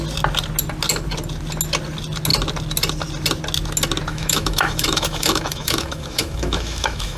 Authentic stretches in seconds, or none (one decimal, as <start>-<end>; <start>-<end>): 0.0-4.1